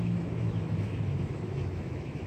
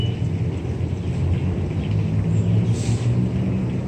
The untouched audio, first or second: second